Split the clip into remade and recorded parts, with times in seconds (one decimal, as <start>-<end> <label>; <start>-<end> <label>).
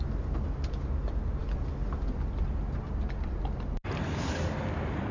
0.0-5.1 recorded